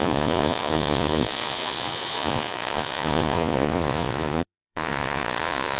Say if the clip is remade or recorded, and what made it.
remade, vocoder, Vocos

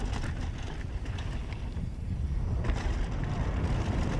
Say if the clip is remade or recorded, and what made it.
recorded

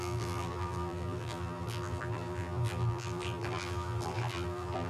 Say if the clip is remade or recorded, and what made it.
remade, vocoder, BigVGAN v2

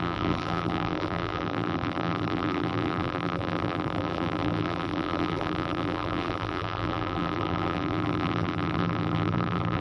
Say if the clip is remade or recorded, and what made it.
remade, vocoder, BigVGAN v2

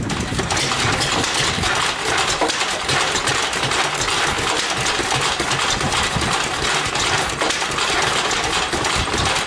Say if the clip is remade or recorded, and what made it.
recorded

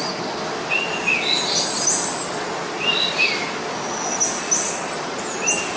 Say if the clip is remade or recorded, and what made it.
recorded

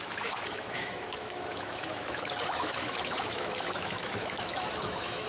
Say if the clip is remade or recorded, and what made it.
remade, autoencoder, DAC-VAE